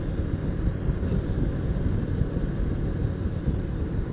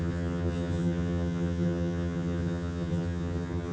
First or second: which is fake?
second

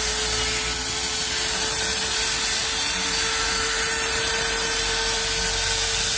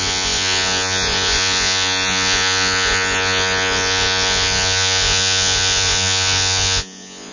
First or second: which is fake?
second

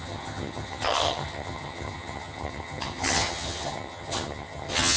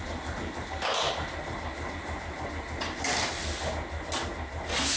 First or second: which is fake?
first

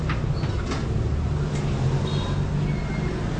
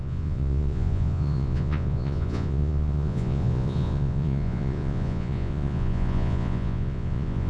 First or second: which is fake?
second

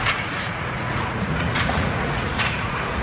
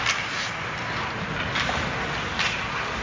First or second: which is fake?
first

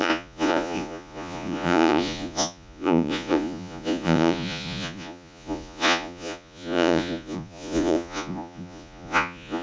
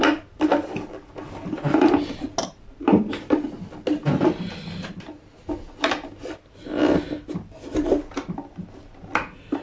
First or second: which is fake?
first